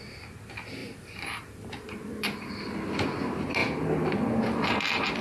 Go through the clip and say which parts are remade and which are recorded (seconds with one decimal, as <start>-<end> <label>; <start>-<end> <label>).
0.0-0.8 recorded; 0.8-2.5 remade; 2.5-5.2 recorded